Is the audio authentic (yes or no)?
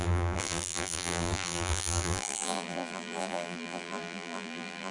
no